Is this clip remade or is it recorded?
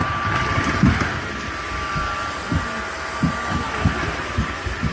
recorded